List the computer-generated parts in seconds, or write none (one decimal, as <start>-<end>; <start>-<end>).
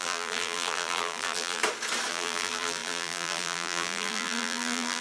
0.0-1.6; 2.1-5.0